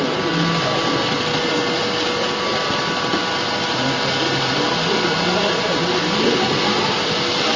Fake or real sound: real